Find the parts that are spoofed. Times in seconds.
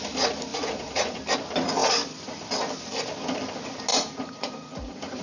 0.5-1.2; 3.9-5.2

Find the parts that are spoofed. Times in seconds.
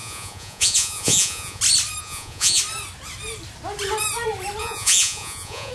0.0-1.6; 2.0-2.6; 4.6-5.7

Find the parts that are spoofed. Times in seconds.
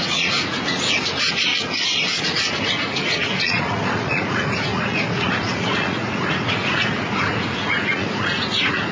0.0-1.5; 2.2-8.9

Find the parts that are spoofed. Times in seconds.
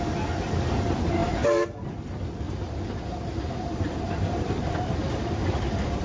none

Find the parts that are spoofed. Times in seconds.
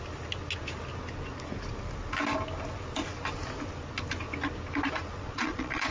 5.2-5.9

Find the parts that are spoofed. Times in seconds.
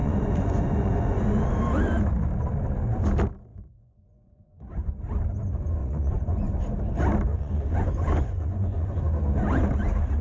0.0-1.4; 3.5-4.9; 5.8-6.6; 7.3-9.0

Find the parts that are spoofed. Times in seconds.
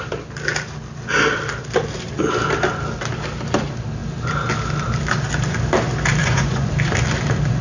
6.2-6.7